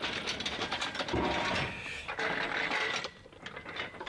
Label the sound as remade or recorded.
recorded